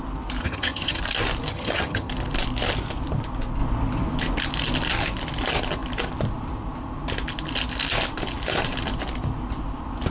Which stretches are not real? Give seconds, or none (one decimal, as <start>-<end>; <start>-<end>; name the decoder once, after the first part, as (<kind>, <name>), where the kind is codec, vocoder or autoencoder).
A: 0.4-1.0 (vocoder, HiFi-GAN); 1.5-2.1